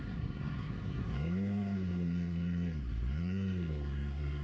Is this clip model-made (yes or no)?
yes